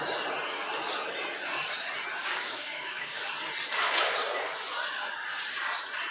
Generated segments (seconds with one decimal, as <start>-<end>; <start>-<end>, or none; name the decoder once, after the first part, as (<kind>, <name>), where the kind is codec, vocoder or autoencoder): 2.2-3.2 (codec, DAC)